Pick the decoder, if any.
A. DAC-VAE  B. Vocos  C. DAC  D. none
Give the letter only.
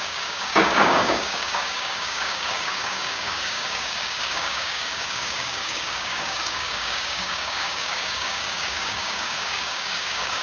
C